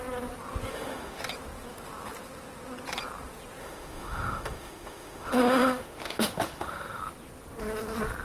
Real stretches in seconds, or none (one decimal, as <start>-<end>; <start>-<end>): 0.0-0.7; 1.2-3.6; 7.0-8.2